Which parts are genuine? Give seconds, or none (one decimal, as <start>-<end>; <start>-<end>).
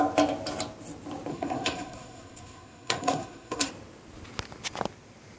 0.0-1.3; 3.7-5.4